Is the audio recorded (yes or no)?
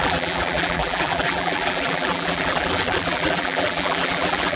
no